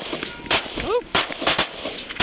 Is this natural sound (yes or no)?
yes